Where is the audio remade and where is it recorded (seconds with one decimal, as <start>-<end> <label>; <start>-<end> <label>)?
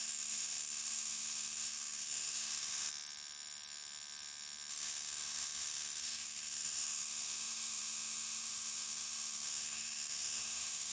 0.0-2.9 remade; 2.9-4.7 recorded; 4.7-10.9 remade